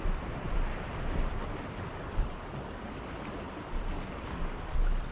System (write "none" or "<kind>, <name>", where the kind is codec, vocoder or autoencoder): vocoder, BigVGAN v2